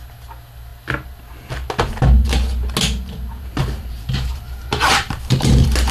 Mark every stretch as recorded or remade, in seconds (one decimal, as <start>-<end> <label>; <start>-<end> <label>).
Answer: 0.0-3.6 recorded; 3.6-5.5 remade; 5.5-5.9 recorded